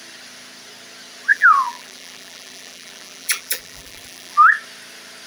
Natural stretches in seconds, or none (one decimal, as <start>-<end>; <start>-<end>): 0.0-1.3; 4.5-5.3